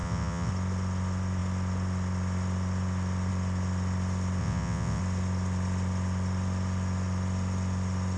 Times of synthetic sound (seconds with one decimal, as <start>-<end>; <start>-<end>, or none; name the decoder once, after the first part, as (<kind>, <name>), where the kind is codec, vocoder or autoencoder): 0.0-0.5 (vocoder, WaveNeXt); 4.4-5.0